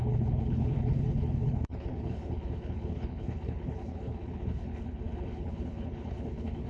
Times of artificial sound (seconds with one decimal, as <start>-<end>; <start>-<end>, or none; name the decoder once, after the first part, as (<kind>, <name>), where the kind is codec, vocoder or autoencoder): 0.0-6.7 (codec, HILCodec)